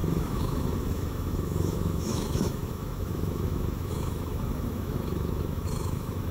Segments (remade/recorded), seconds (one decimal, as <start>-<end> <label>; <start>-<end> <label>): 0.0-6.3 remade